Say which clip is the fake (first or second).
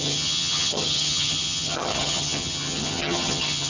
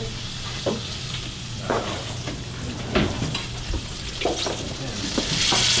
first